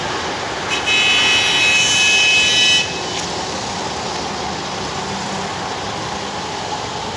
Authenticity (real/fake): real